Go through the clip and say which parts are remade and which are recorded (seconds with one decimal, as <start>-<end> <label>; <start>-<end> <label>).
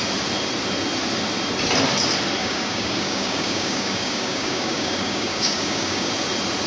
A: 0.0-2.4 recorded; 2.4-6.1 remade; 6.1-6.7 recorded